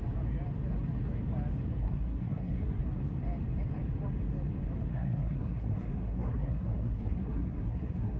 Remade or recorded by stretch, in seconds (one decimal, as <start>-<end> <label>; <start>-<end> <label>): 0.0-1.8 recorded; 1.8-2.8 remade; 2.8-4.9 recorded; 4.9-8.2 remade